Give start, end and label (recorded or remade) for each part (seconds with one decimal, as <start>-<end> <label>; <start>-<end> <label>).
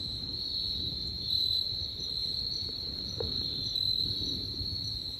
0.0-1.4 recorded; 1.4-4.5 remade; 4.5-5.2 recorded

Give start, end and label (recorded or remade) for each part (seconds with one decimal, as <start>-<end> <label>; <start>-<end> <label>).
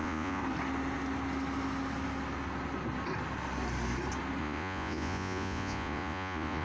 0.0-0.4 remade; 0.4-4.4 recorded; 4.4-6.6 remade